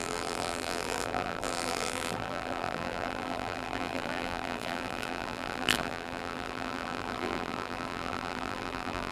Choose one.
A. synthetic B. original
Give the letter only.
A